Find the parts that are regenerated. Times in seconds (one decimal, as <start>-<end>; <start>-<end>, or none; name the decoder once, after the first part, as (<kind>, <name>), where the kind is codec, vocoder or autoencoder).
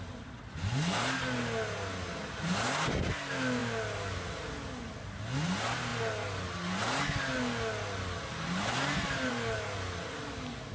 none